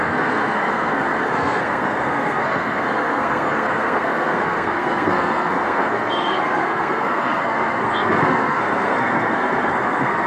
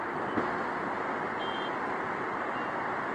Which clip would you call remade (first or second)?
first